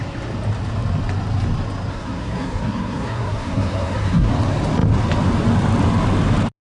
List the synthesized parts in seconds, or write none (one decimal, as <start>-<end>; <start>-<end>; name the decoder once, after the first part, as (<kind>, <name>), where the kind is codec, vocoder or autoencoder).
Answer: 1.9-4.3 (codec, SNAC)